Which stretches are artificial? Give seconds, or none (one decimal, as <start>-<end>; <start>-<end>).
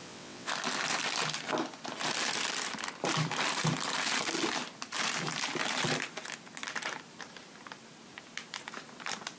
0.0-0.5